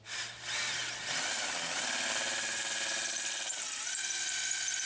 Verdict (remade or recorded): recorded